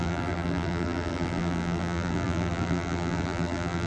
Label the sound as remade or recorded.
remade